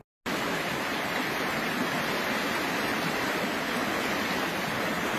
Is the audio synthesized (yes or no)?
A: no